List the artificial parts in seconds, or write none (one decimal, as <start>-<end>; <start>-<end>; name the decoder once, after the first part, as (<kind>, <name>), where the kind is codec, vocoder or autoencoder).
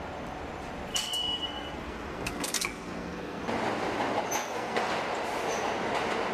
0.9-3.4 (codec, SNAC); 4.4-4.9